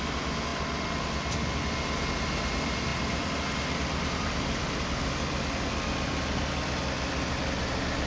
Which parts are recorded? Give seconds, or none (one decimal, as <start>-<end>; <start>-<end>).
0.0-0.5; 1.5-2.9; 5.7-8.1